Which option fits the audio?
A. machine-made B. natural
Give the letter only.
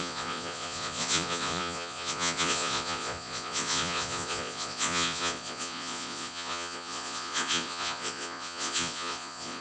A